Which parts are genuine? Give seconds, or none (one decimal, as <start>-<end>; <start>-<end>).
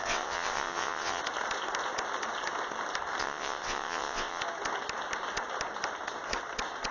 1.2-3.2; 4.4-6.9